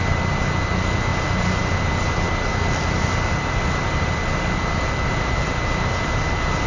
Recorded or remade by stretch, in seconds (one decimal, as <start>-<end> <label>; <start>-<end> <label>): 0.0-6.7 recorded